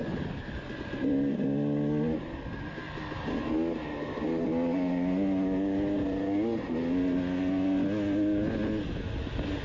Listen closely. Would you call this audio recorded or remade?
recorded